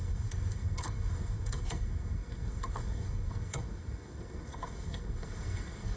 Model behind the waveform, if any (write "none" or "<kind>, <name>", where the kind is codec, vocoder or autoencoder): codec, SNAC